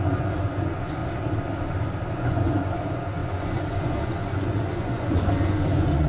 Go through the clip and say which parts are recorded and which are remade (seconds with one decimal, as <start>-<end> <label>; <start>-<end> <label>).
0.0-1.0 remade; 1.0-2.1 recorded; 2.1-6.1 remade